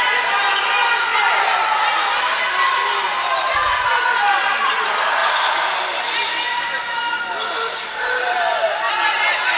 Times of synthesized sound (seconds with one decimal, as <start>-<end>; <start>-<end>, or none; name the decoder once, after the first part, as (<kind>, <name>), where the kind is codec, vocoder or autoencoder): none